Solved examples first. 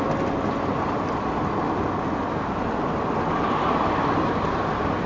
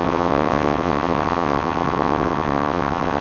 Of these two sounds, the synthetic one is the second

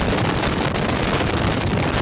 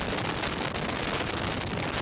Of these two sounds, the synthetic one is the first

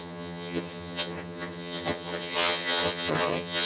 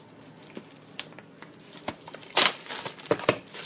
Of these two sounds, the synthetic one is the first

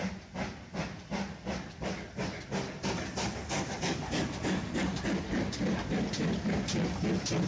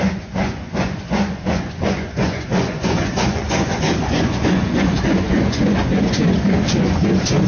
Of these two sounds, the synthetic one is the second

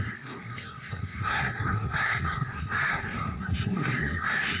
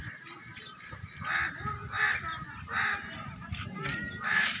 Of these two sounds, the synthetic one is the first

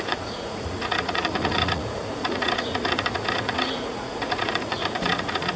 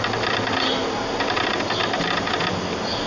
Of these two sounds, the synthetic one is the first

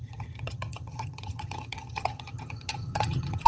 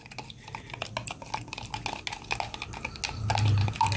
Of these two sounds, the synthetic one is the first